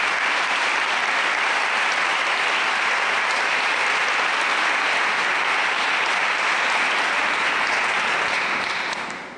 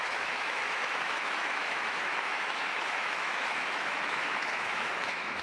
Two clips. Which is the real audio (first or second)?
first